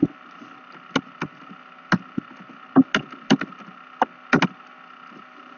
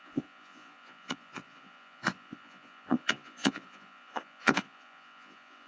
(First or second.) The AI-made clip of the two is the second